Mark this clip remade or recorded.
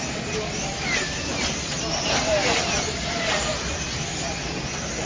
recorded